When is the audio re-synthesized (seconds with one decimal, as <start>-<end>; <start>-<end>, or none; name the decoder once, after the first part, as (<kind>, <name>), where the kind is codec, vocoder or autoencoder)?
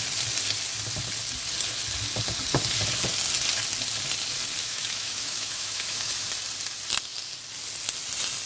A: 4.6-6.1 (autoencoder, DAC-VAE)